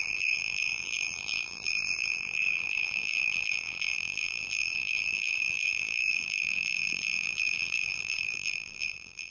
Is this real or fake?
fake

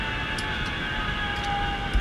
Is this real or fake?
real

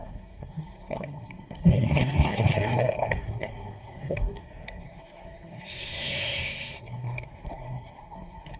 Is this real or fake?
fake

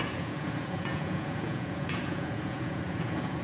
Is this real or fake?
fake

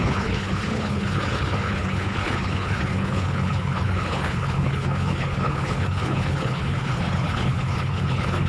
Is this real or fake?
fake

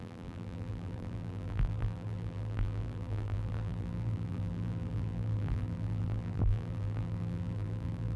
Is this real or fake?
fake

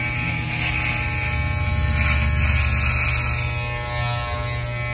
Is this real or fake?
real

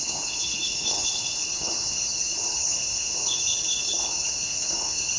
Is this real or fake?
fake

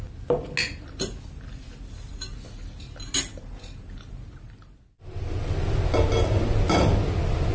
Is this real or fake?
real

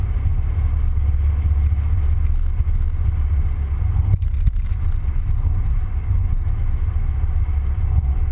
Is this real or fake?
real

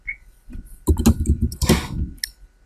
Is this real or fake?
real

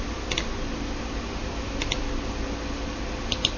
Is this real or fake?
real